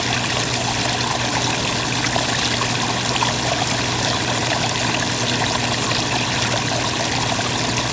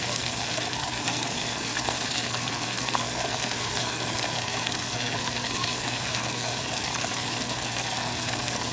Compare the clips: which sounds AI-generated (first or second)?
second